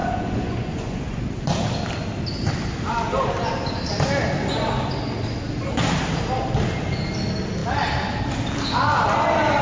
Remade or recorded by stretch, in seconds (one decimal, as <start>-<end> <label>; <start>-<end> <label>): 0.0-1.3 remade; 1.3-9.6 recorded